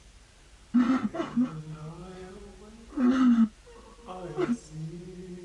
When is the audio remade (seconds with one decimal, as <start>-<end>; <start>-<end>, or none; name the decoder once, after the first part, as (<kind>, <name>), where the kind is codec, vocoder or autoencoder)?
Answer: 1.0-1.6 (vocoder, Vocos)